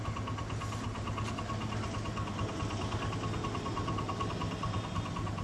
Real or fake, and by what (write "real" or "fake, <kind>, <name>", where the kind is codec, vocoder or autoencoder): real